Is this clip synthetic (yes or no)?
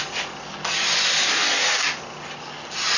no